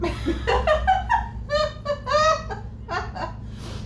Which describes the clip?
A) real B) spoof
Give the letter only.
A